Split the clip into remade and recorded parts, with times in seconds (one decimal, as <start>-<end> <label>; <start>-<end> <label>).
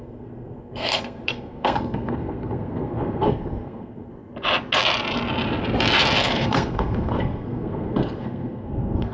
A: 0.0-4.1 remade; 4.1-6.2 recorded; 6.2-9.1 remade